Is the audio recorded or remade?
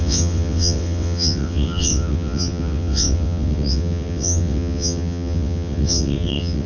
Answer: remade